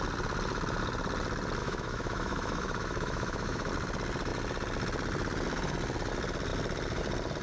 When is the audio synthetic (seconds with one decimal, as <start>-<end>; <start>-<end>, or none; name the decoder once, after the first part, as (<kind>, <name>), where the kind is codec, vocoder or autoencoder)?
1.6-3.7 (autoencoder, DAC-VAE)